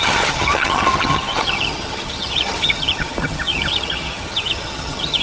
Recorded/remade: remade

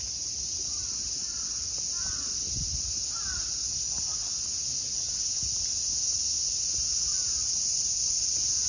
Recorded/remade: recorded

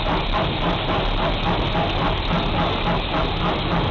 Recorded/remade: recorded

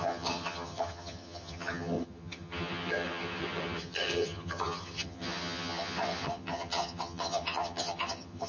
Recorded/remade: remade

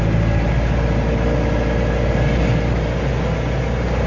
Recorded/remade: recorded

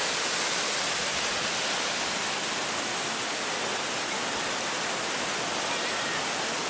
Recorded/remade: recorded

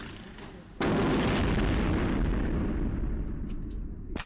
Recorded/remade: recorded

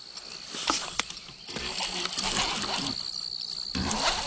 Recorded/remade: recorded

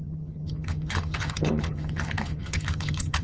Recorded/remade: remade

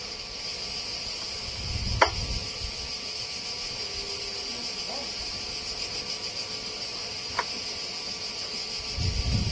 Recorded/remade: recorded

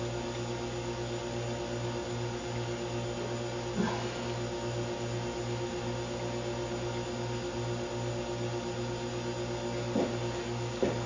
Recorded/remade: recorded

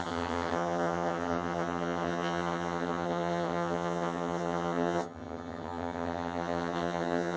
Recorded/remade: remade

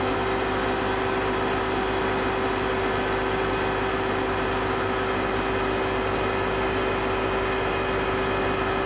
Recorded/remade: recorded